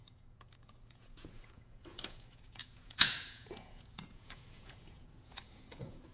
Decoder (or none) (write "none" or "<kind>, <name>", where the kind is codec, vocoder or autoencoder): vocoder, Vocos